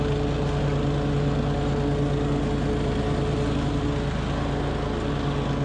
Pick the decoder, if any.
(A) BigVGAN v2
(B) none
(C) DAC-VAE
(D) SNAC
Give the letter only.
B